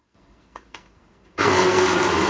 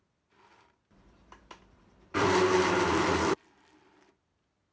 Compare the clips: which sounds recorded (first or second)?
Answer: second